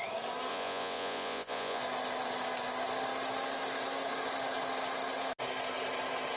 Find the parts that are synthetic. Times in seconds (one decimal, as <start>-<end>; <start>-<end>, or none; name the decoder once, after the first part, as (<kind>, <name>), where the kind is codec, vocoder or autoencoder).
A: 0.5-1.8 (vocoder, Vocos)